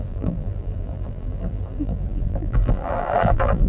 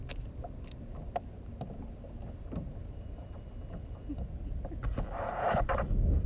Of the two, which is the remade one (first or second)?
first